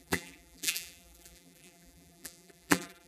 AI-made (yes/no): yes